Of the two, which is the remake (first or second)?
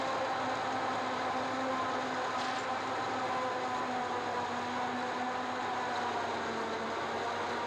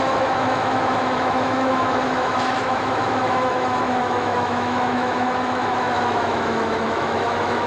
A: second